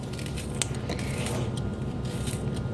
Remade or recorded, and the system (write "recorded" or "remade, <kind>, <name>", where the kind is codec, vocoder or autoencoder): recorded